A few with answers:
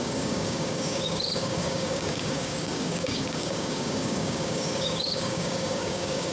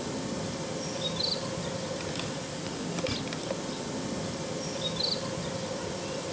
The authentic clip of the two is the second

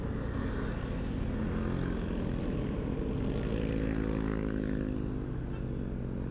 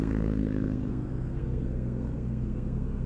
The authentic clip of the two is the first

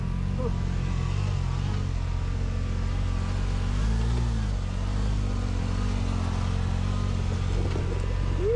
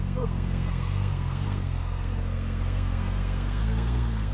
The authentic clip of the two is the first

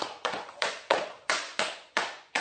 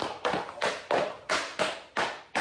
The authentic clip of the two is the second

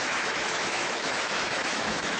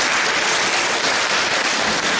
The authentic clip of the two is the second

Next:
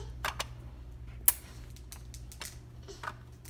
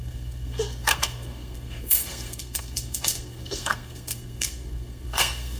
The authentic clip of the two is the first